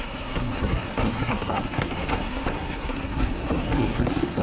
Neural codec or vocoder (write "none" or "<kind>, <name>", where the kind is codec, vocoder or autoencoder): codec, SNAC